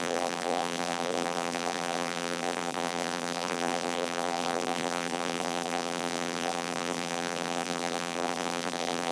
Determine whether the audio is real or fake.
fake